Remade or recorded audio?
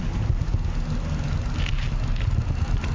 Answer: recorded